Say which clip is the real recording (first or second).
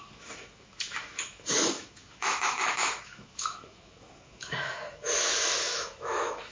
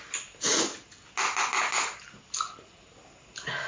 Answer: second